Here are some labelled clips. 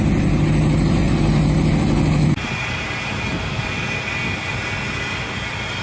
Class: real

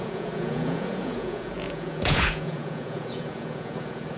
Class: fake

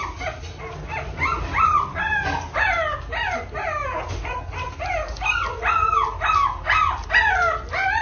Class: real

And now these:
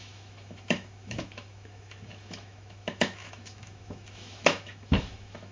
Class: fake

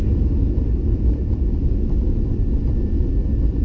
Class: real